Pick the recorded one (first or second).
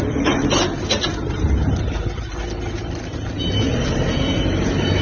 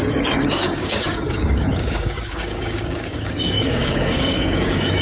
first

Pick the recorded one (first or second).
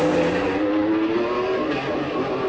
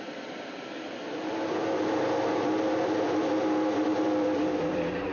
first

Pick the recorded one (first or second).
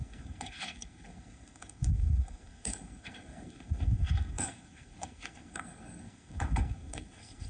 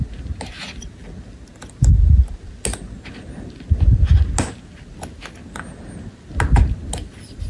second